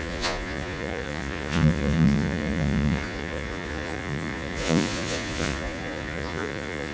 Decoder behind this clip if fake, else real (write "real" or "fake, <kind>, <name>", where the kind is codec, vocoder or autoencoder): fake, vocoder, Vocos